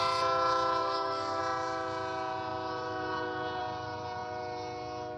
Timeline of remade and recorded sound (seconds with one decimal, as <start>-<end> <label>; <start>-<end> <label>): 0.0-0.8 recorded; 0.8-1.4 remade; 1.4-5.2 recorded